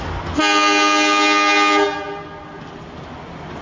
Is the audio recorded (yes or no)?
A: yes